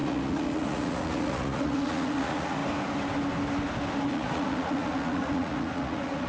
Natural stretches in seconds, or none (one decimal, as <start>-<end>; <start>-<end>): 2.6-4.1